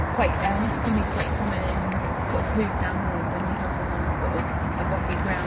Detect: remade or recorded remade